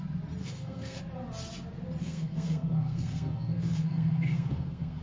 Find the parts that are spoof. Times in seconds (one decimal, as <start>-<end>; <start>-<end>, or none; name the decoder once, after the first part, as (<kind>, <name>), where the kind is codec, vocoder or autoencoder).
0.4-1.0 (codec, SNAC); 2.0-5.0